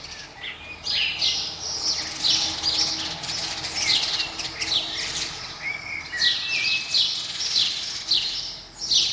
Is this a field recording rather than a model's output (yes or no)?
yes